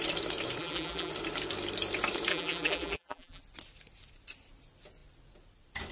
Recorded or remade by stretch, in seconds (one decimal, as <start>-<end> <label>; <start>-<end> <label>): 0.0-0.6 recorded; 0.6-1.1 remade; 1.1-2.3 recorded; 2.3-3.4 remade; 3.4-5.9 recorded